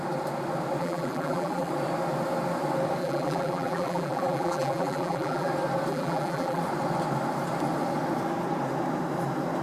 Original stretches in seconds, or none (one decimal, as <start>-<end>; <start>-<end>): 0.0-0.8; 1.7-3.0; 5.5-5.9; 6.6-9.6